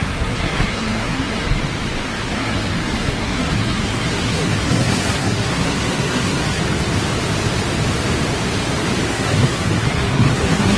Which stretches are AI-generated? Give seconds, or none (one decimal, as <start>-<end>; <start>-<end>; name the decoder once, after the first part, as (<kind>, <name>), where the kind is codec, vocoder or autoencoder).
0.0-1.6 (codec, SNAC); 2.1-6.6; 9.1-10.8